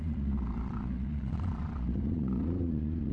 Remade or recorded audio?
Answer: remade